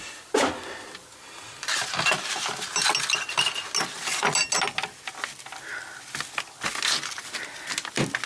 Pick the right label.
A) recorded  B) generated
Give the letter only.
A